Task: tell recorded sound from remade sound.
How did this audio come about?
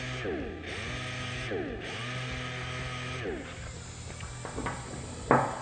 recorded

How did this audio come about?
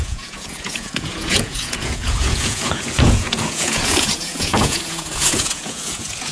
remade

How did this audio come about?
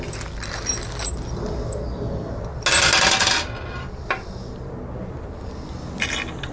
recorded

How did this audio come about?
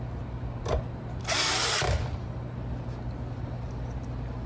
recorded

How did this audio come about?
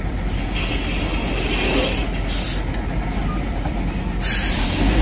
recorded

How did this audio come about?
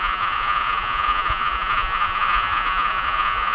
remade